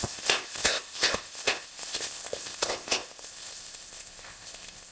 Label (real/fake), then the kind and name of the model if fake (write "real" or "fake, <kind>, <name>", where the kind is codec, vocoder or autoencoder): fake, codec, ZipCodec